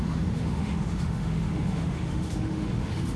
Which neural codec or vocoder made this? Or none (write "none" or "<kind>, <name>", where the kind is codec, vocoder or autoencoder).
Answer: autoencoder, DAC-VAE